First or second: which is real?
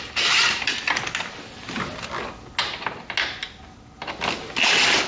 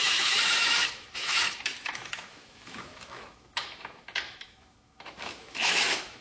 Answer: first